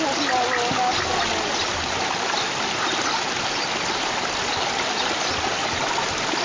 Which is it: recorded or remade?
recorded